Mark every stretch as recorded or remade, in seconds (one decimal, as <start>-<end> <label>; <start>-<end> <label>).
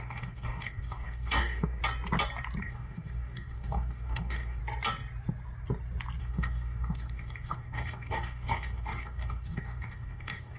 0.0-1.8 remade; 1.8-2.6 recorded; 2.6-4.6 remade; 4.6-6.2 recorded; 6.2-10.6 remade